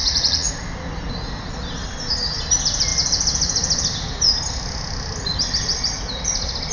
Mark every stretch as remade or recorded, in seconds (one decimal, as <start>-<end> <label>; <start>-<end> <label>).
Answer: 0.0-0.5 remade; 0.5-6.7 recorded